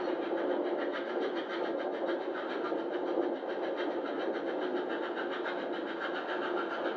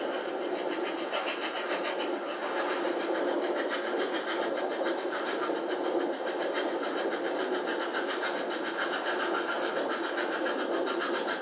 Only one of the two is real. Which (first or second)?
first